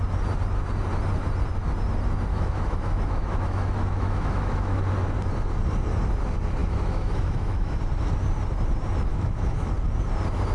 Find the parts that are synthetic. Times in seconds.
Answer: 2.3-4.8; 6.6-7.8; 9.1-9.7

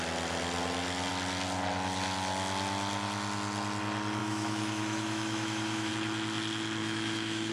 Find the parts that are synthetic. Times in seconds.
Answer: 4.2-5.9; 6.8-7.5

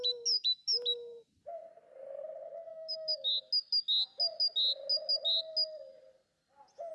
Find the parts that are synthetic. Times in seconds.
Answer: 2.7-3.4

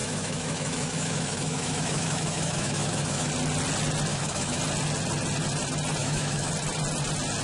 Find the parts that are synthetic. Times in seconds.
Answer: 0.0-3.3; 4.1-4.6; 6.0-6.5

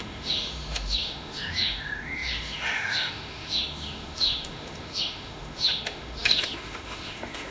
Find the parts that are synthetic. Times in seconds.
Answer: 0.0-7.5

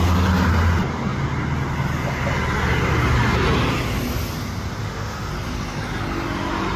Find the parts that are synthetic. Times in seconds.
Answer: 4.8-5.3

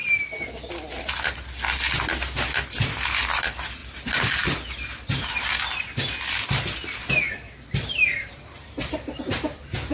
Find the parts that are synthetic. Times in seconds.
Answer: none

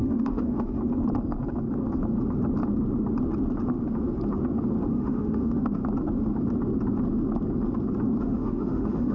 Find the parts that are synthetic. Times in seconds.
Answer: 0.0-0.8; 4.9-5.8; 8.2-9.1